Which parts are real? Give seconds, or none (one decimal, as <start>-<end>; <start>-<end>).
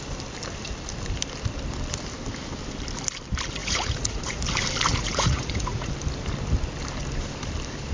0.0-3.6; 4.4-4.9; 5.9-7.9